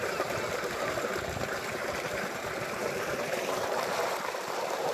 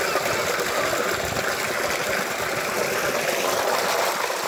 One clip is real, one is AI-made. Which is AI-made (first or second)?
first